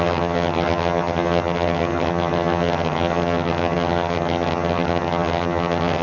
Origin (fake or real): fake